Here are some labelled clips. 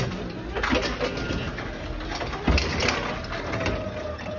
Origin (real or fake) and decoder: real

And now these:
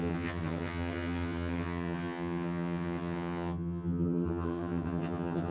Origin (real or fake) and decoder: fake, vocoder, HiFi-GAN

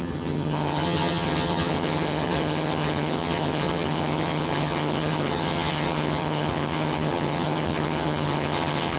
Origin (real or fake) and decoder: fake, vocoder, HiFi-GAN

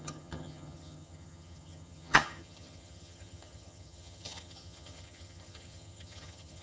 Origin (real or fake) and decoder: fake, vocoder, HiFi-GAN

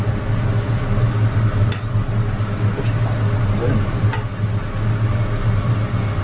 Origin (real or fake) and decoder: real